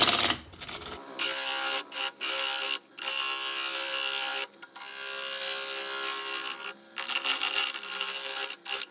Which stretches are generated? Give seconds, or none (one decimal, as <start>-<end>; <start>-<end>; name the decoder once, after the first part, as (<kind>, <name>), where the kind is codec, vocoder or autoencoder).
none